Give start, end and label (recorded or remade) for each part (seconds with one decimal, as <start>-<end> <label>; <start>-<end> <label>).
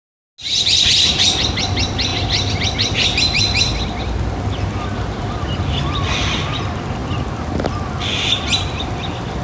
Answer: 0.0-9.4 recorded